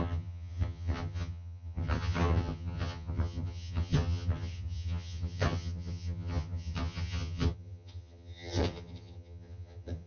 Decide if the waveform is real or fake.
fake